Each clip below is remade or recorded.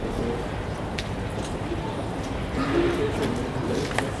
recorded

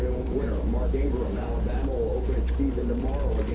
remade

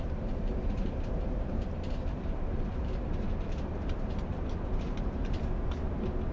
remade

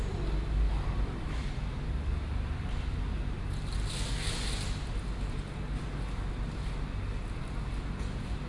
recorded